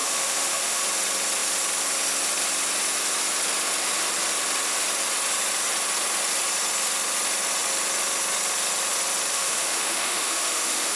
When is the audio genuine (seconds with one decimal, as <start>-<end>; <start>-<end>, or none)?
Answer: 0.8-9.3